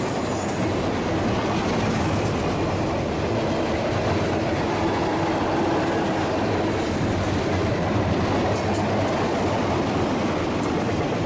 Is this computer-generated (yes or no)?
no